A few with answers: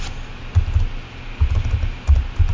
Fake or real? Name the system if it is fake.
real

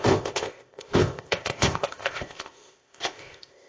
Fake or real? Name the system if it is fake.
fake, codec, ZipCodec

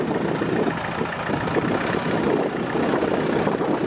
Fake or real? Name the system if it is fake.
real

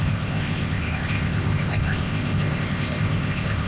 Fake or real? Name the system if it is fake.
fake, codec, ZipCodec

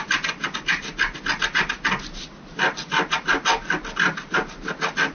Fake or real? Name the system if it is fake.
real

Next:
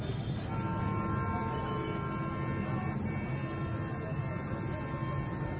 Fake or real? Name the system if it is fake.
real